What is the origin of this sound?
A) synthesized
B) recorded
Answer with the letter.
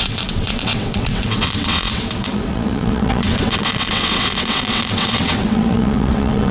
A